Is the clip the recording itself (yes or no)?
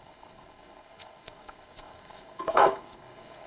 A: no